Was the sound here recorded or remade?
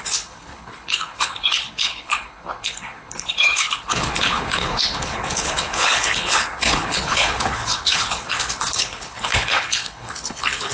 remade